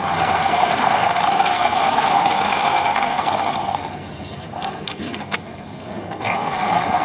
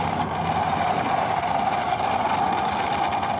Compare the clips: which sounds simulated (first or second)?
first